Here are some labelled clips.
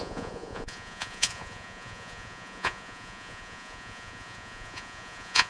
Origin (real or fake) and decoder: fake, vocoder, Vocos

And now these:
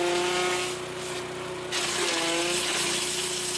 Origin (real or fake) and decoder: real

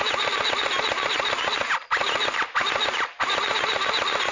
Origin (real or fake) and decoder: real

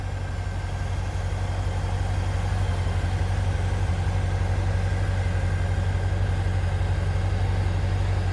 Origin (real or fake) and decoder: real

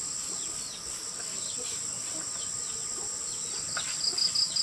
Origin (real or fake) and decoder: real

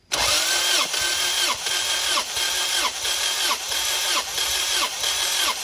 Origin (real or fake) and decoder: fake, vocoder, BigVGAN v2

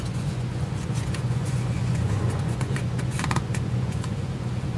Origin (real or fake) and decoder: fake, vocoder, Vocos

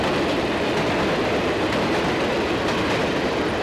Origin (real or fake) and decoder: real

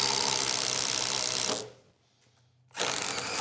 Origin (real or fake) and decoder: real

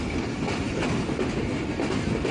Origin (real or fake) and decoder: real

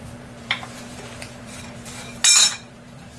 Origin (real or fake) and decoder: fake, vocoder, BigVGAN v2